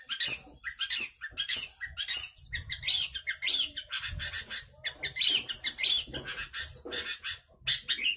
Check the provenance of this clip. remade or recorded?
recorded